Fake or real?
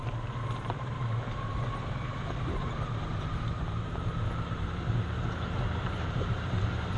fake